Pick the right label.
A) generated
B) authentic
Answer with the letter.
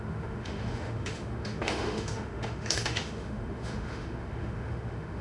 A